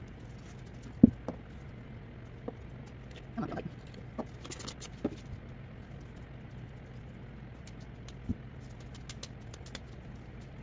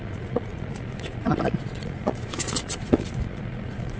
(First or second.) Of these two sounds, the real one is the first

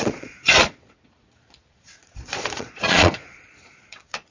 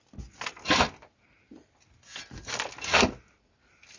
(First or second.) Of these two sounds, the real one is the second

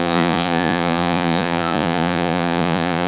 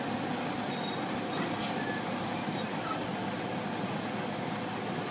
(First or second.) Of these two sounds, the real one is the second